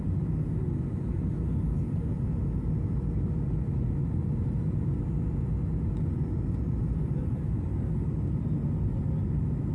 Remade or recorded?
recorded